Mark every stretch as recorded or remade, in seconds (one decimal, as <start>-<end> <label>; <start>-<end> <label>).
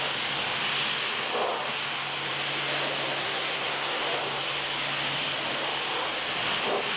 0.0-3.2 recorded; 3.2-4.0 remade; 4.0-7.0 recorded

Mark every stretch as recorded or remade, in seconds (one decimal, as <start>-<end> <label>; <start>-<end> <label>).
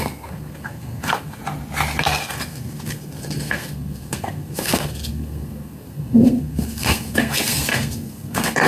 0.0-1.4 remade; 1.4-2.0 recorded; 2.0-8.7 remade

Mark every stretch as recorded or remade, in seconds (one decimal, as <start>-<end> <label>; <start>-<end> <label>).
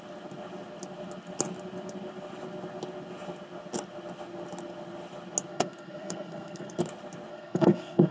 0.0-5.5 recorded; 5.5-6.8 remade; 6.8-7.3 recorded; 7.3-8.1 remade